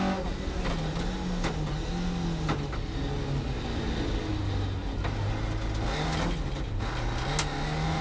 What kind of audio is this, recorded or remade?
recorded